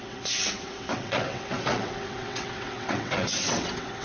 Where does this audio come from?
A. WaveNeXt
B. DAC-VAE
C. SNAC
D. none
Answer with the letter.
A